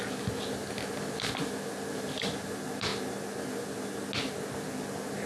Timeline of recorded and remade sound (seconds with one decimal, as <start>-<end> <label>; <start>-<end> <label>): 0.0-5.3 recorded